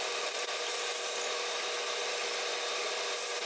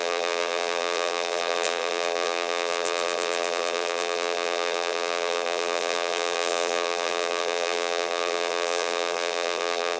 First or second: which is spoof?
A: second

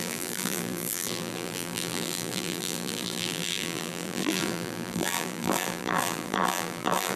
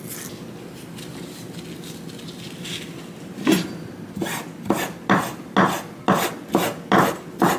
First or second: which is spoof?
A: first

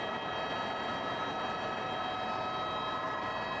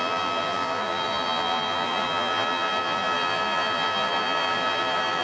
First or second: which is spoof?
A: second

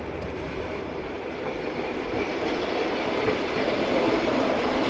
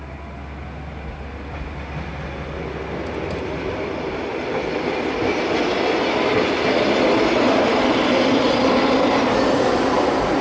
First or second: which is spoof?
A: first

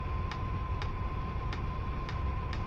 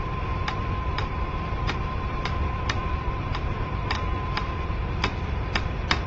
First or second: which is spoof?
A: second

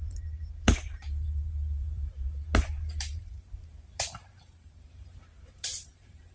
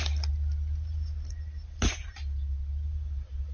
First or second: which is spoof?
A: first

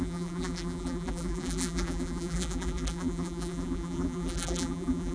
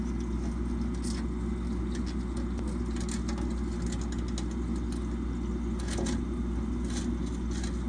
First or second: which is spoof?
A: first